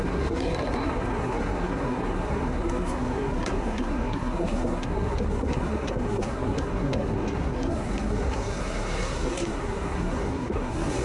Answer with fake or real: fake